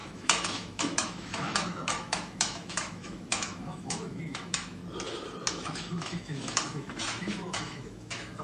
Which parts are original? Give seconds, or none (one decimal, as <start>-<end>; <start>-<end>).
4.8-5.5